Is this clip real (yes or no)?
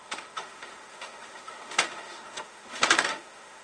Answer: no